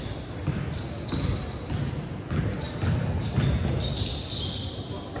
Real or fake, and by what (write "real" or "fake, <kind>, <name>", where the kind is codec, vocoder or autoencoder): real